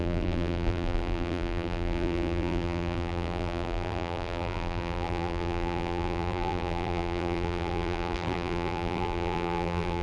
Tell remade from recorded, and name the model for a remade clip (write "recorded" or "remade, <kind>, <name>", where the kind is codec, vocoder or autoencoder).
remade, vocoder, BigVGAN v2